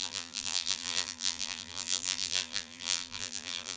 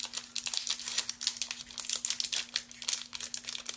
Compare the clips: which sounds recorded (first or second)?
second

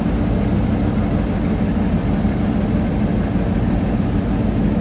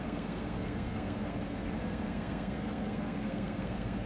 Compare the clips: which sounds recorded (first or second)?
first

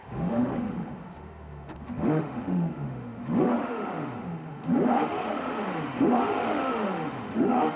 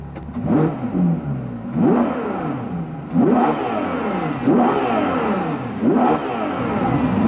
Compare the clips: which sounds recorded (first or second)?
second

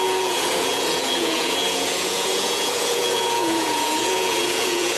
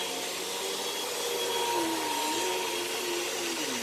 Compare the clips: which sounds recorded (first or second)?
second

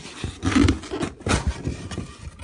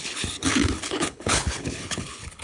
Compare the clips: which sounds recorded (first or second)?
first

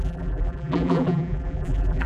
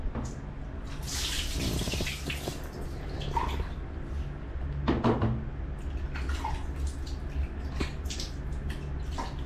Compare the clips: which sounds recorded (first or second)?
second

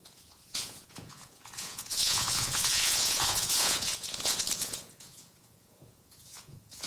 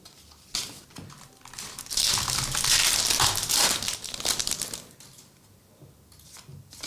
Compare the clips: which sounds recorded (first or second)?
second